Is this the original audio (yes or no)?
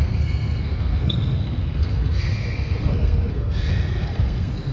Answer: no